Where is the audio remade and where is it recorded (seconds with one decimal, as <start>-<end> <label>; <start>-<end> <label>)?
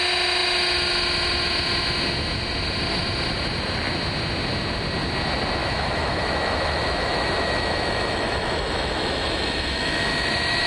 0.0-5.6 recorded; 5.6-10.7 remade